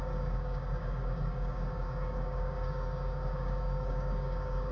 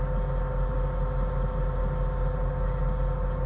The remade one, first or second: first